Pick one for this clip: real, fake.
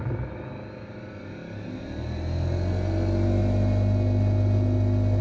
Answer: real